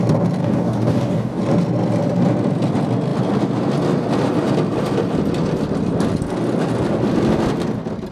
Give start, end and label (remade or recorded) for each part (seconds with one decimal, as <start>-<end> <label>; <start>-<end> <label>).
0.0-0.4 recorded; 0.4-1.4 remade; 1.4-8.1 recorded